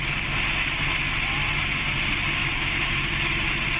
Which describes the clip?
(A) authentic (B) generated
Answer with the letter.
A